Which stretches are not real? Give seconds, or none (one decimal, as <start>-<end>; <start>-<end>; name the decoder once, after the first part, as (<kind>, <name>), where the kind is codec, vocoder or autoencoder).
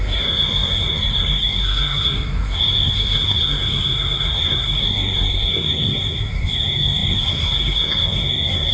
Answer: 0.0-8.7 (codec, SNAC)